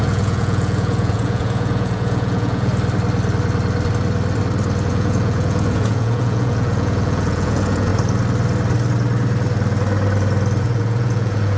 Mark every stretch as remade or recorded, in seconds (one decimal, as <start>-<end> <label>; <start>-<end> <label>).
0.0-2.7 remade; 2.7-4.9 recorded; 4.9-7.9 remade; 7.9-10.6 recorded; 10.6-11.6 remade